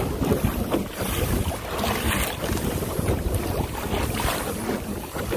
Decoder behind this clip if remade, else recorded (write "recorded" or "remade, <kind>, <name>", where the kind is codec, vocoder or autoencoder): recorded